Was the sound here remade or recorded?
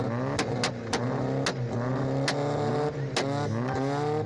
recorded